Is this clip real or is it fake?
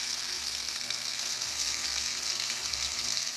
fake